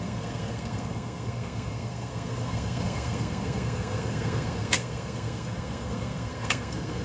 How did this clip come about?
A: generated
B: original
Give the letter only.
A